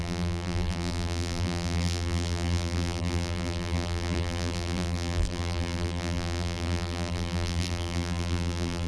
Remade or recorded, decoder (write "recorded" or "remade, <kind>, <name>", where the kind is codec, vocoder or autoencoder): remade, vocoder, BigVGAN v2